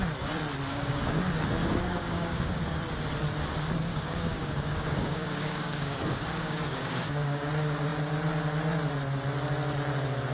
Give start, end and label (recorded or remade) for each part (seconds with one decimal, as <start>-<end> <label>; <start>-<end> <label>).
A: 0.0-0.7 recorded; 0.7-1.2 remade; 1.2-1.6 recorded; 1.6-2.8 remade; 2.8-3.9 recorded; 3.9-7.5 remade; 7.5-10.3 recorded